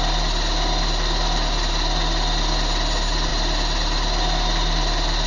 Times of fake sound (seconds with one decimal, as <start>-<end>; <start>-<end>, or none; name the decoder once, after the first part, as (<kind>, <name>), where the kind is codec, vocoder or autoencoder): none